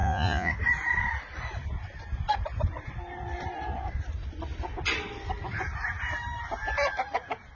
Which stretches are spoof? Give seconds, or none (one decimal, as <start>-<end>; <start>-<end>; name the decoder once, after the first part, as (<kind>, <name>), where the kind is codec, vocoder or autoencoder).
0.0-0.5 (vocoder, Vocos)